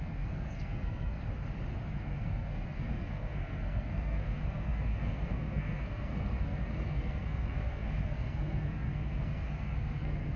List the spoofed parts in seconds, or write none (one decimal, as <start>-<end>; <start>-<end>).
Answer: 0.0-1.2; 1.9-10.4